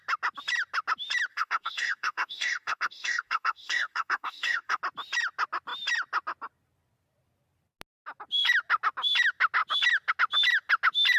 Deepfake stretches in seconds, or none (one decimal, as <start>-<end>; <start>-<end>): 1.3-4.8